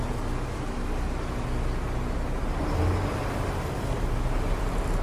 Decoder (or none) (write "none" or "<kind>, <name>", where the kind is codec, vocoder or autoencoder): none